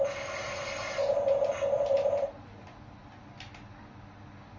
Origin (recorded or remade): recorded